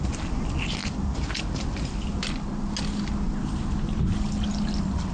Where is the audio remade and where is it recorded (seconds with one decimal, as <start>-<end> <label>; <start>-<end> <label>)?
0.0-5.1 recorded